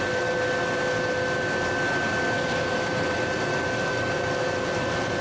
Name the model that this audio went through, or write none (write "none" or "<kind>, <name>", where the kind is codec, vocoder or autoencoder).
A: none